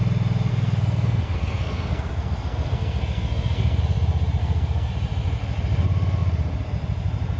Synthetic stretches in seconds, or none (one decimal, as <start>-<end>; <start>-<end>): 0.5-3.8; 4.4-4.9